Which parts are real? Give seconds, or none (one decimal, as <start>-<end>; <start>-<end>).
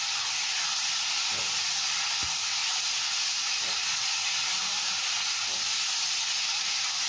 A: 0.0-7.1